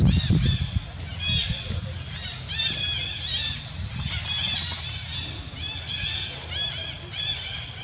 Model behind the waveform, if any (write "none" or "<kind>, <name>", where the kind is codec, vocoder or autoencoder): none